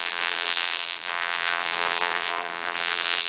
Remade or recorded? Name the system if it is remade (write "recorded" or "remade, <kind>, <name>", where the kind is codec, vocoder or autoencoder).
remade, vocoder, BigVGAN v2